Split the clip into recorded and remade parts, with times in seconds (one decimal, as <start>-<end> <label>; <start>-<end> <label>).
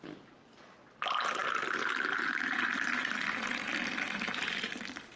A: 0.0-5.2 recorded